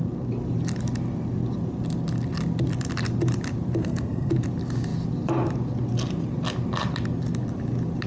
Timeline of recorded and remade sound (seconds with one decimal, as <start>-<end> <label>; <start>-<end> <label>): 0.0-3.8 recorded; 3.8-4.3 remade; 4.3-8.1 recorded